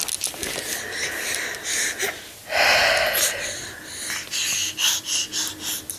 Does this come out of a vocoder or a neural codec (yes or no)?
no